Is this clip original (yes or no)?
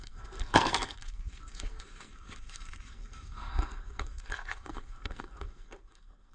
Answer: no